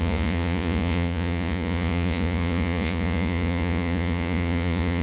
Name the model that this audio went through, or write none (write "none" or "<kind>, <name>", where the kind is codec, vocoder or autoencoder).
vocoder, Vocos